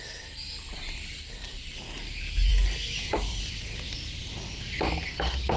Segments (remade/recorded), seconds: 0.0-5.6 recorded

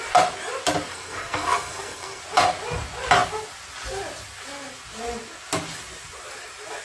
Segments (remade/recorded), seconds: 0.0-0.9 recorded; 0.9-2.2 remade; 2.2-6.8 recorded

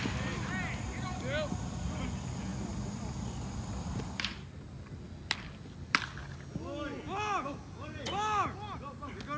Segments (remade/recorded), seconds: 0.0-9.4 recorded

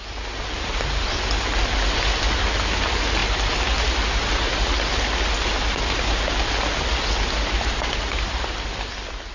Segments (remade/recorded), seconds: 0.0-9.3 recorded

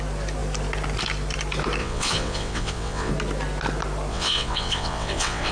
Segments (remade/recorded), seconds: 0.0-1.8 recorded; 1.8-3.1 remade; 3.1-4.1 recorded; 4.1-5.5 remade